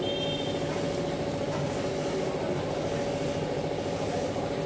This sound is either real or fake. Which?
real